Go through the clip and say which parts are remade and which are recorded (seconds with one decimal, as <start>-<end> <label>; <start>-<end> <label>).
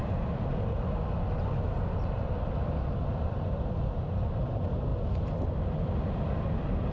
0.0-6.9 recorded